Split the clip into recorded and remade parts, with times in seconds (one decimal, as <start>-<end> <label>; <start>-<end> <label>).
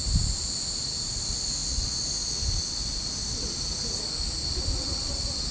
0.0-5.5 recorded